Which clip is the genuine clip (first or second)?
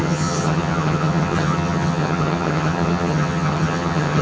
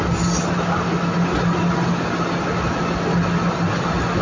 second